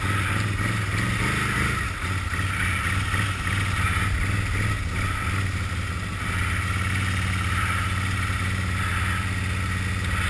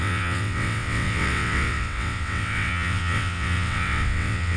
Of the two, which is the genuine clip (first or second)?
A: first